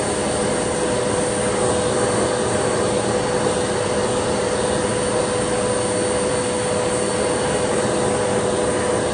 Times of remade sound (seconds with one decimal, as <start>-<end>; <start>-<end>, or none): none